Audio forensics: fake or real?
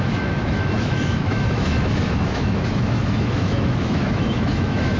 fake